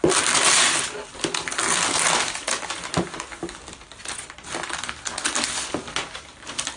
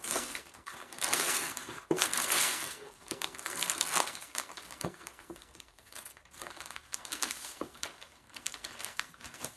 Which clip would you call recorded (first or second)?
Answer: first